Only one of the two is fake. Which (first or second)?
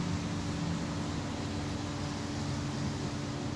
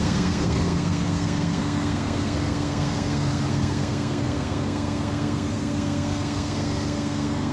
second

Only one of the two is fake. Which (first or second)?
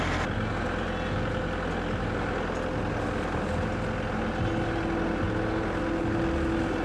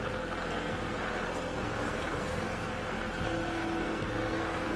second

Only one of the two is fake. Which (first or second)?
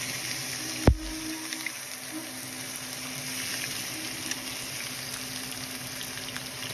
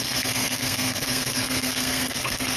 second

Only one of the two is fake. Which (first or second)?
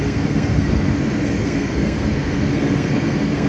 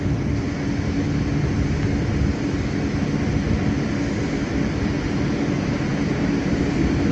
first